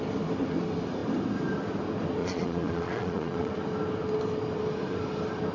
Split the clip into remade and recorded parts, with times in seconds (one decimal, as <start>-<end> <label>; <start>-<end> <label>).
0.0-2.2 recorded; 2.2-3.5 remade; 3.5-5.5 recorded